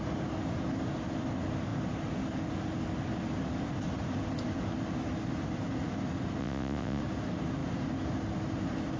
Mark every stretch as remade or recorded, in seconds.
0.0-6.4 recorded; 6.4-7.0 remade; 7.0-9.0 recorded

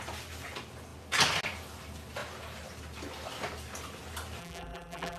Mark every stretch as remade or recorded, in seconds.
0.0-4.4 recorded; 4.4-5.2 remade

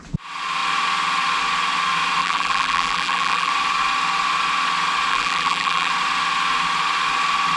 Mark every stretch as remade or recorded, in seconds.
0.0-2.2 recorded; 2.2-3.5 remade; 3.5-5.1 recorded; 5.1-5.9 remade; 5.9-7.6 recorded

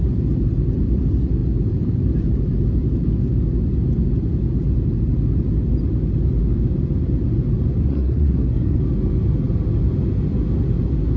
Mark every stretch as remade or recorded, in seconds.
0.0-7.9 recorded; 7.9-8.8 remade; 8.8-11.2 recorded

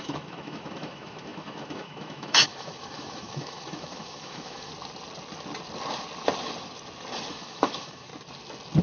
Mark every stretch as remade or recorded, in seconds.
0.0-4.7 remade; 4.7-7.3 recorded; 7.3-8.1 remade; 8.1-8.8 recorded

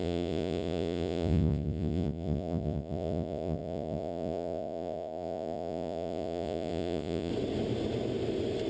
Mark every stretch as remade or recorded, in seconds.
0.0-7.3 remade; 7.3-8.7 recorded